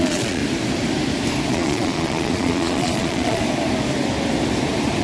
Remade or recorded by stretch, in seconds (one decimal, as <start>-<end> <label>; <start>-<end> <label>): 0.0-0.4 remade; 0.4-1.5 recorded; 1.5-3.4 remade; 3.4-5.0 recorded